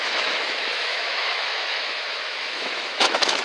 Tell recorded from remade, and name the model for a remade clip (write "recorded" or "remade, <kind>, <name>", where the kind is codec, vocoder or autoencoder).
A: remade, autoencoder, DAC-VAE